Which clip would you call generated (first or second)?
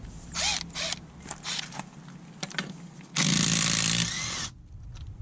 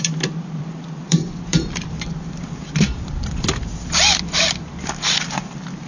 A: second